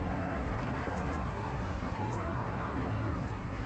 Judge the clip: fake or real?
fake